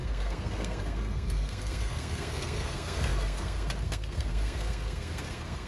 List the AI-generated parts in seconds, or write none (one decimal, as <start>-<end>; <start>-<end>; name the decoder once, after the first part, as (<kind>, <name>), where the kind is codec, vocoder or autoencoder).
0.0-5.7 (codec, SNAC)